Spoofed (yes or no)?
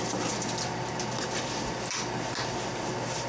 no